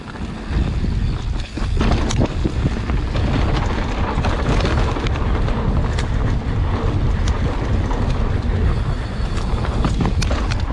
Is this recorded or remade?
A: recorded